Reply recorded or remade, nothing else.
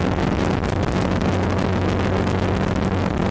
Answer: recorded